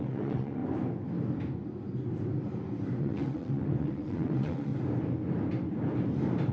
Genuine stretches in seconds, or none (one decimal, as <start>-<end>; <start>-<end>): 0.6-3.0; 4.7-6.5